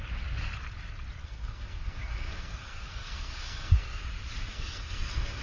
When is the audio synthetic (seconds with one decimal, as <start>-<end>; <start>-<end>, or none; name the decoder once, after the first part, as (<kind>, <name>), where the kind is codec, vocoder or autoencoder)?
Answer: 1.2-4.0 (codec, SNAC); 4.5-5.4